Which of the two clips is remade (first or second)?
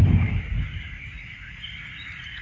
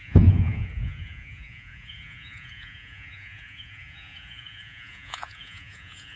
second